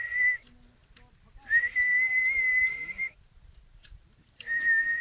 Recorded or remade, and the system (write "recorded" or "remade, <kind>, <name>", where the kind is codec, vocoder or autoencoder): recorded